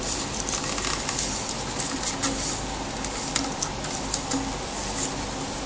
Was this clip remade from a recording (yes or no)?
no